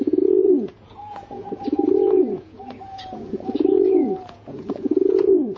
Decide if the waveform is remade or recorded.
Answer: remade